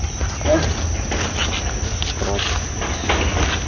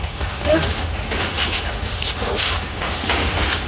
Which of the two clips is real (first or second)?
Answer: first